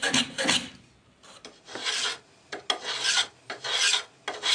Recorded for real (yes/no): yes